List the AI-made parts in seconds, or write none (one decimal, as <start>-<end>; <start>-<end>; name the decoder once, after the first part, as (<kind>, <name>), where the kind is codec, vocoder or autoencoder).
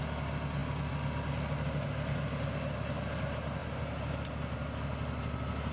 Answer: none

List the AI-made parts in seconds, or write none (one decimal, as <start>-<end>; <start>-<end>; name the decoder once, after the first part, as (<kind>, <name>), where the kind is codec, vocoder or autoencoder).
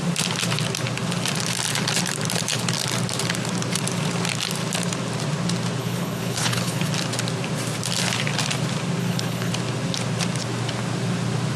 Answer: 5.8-6.9 (codec, HILCodec); 9.0-9.5